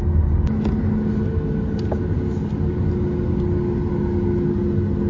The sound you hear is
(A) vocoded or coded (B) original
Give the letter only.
B